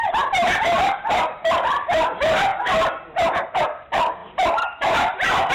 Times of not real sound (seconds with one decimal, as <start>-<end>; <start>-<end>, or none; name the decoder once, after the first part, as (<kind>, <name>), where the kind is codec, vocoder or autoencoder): 0.0-2.5 (vocoder, BigVGAN v2); 3.6-5.5